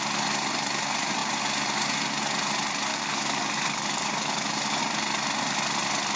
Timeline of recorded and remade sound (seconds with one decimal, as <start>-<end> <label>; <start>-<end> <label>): 0.0-2.9 recorded; 2.9-4.8 remade; 4.8-6.2 recorded